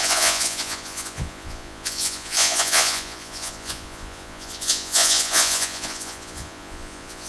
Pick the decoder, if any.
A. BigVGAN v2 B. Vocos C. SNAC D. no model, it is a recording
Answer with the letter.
B